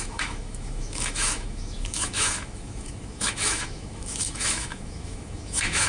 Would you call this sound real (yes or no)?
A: no